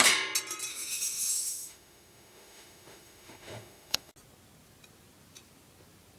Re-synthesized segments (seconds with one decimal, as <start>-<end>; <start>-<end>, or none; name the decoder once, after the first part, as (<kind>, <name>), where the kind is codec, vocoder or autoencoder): 0.7-4.1 (autoencoder, DAC-VAE)

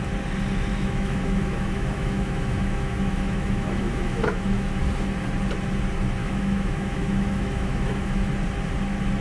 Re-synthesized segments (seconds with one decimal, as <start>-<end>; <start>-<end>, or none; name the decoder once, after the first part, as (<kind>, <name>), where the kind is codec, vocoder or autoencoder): 0.7-4.8 (autoencoder, DAC-VAE); 6.2-8.3

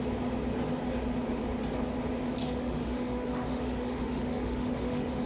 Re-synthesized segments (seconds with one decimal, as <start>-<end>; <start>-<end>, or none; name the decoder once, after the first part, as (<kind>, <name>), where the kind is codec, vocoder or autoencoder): 2.4-5.3 (autoencoder, DAC-VAE)

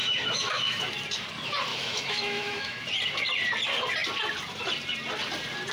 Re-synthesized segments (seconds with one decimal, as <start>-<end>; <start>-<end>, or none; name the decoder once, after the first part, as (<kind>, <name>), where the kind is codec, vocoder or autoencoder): 0.0-0.8 (autoencoder, DAC-VAE); 1.7-2.9

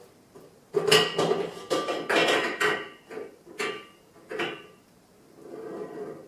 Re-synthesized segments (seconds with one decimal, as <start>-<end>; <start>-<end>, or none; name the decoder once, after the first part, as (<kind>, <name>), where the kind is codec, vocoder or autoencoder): none

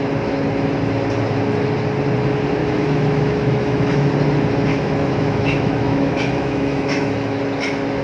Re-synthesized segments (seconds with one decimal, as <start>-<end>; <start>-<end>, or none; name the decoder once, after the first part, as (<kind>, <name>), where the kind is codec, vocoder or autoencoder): 2.6-4.1 (autoencoder, DAC-VAE); 4.7-7.4

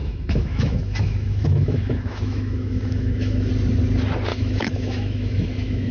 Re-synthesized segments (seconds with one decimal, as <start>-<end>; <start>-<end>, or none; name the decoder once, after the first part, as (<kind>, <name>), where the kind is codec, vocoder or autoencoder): 0.0-3.5 (autoencoder, DAC-VAE); 4.3-5.9

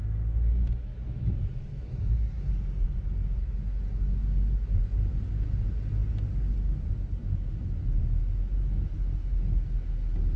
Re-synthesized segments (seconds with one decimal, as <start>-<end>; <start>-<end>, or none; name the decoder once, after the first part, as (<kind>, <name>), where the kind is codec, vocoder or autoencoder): 0.9-2.1 (autoencoder, DAC-VAE)